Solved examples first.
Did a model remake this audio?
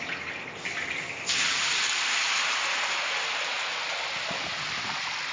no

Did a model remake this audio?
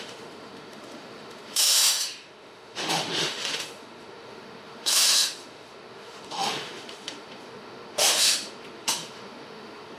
yes